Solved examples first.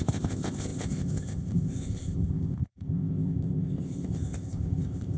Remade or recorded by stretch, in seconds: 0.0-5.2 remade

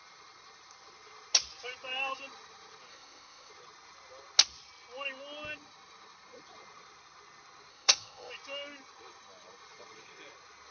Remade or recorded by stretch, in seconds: 0.0-2.9 recorded; 2.9-3.5 remade; 3.5-7.7 recorded; 7.7-8.3 remade; 8.3-10.7 recorded

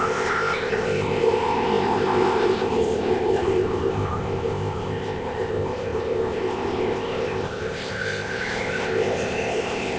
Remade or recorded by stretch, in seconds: 0.0-10.0 remade

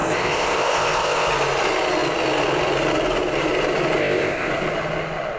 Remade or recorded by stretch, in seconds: 0.0-1.3 remade; 1.3-4.0 recorded; 4.0-4.5 remade; 4.5-5.4 recorded

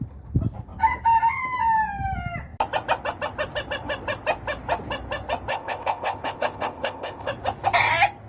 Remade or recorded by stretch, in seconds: 0.0-5.5 recorded; 5.5-7.3 remade; 7.3-8.3 recorded